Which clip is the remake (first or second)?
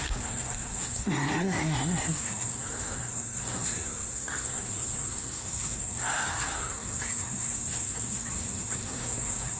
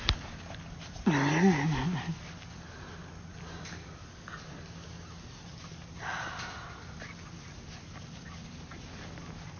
first